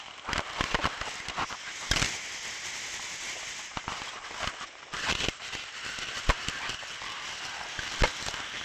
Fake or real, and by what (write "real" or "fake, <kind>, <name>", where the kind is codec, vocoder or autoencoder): real